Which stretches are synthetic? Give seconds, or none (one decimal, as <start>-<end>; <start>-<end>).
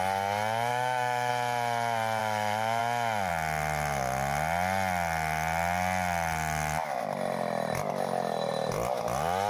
0.7-1.3; 2.2-2.8